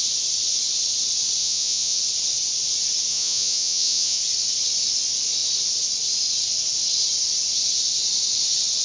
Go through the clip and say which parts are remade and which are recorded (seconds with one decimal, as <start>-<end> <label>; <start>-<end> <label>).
0.0-1.4 recorded; 1.4-2.0 remade; 2.0-3.1 recorded; 3.1-4.2 remade; 4.2-8.8 recorded